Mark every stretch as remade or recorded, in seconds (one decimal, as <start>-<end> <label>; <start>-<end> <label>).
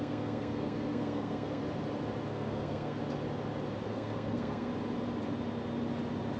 0.0-1.6 remade; 1.6-2.3 recorded; 2.3-3.0 remade; 3.0-3.9 recorded; 3.9-4.7 remade; 4.7-6.4 recorded